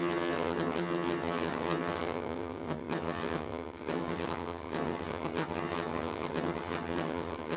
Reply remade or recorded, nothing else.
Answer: remade